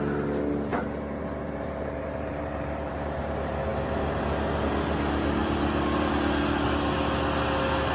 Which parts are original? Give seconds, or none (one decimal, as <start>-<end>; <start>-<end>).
0.0-0.7; 3.2-5.4; 6.1-7.9